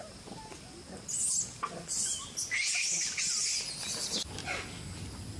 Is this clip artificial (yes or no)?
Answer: no